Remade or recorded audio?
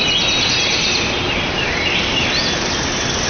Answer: recorded